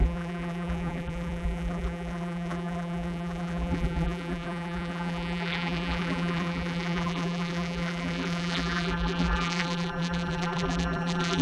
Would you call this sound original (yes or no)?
no